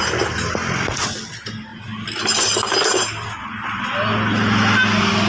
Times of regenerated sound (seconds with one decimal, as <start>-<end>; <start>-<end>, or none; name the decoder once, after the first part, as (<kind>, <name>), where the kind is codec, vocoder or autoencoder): none

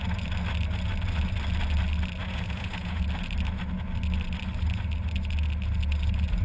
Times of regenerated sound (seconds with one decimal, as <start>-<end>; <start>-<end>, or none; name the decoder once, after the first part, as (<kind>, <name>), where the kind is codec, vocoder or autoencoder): 2.2-3.0 (vocoder, Vocos)

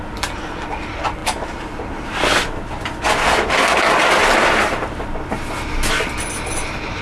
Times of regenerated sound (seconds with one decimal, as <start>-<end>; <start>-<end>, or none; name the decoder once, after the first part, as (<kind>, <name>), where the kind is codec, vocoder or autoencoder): none

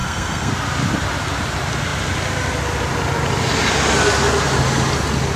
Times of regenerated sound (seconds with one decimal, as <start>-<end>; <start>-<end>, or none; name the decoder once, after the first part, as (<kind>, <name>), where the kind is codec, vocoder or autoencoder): 0.0-0.5 (codec, SNAC)